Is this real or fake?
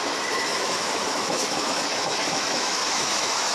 fake